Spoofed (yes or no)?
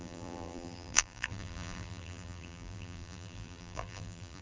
yes